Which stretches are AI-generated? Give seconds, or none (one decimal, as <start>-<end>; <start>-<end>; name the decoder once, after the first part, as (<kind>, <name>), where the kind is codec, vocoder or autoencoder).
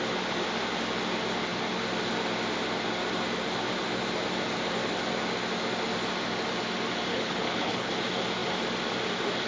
7.1-7.9 (codec, HILCodec)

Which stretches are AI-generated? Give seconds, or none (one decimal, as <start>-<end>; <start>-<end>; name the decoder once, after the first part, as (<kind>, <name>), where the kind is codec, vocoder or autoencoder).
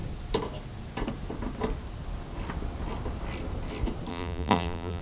4.1-5.0 (vocoder, BigVGAN v2)